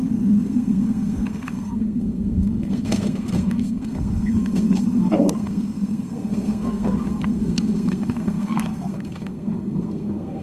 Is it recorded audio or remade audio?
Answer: remade